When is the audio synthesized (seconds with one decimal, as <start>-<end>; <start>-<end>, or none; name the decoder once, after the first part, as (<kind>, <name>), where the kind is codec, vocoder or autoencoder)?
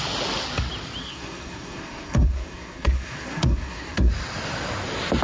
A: 1.0-4.1 (codec, SNAC)